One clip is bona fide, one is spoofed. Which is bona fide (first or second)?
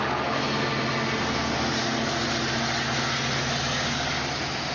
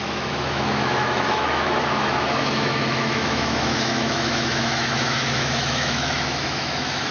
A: first